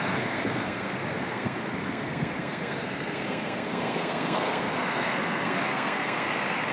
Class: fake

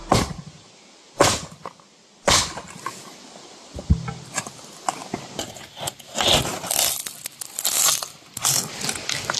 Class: real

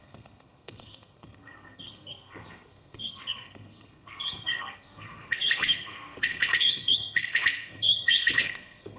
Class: fake